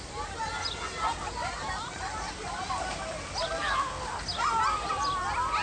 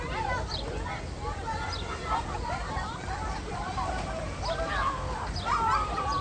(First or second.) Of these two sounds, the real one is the first